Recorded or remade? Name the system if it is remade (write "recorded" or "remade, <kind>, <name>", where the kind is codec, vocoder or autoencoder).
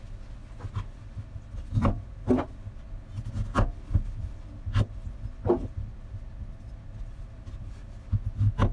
recorded